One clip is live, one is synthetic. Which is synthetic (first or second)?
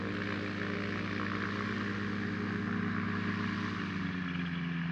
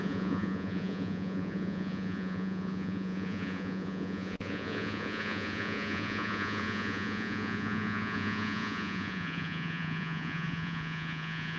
second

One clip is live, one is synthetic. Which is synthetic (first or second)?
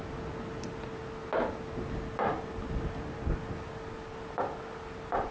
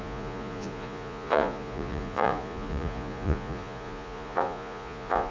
second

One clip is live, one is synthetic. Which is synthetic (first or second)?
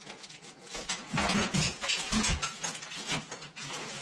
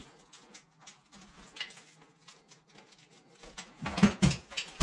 first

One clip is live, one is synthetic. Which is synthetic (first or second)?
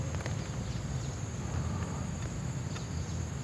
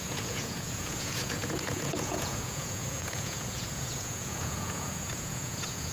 second